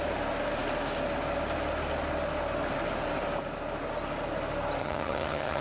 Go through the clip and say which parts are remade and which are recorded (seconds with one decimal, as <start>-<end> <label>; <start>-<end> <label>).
0.0-4.8 recorded; 4.8-5.6 remade